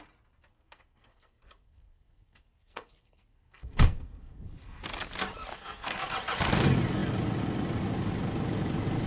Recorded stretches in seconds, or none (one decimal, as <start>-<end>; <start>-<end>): 0.0-0.5; 4.8-5.5; 6.1-9.1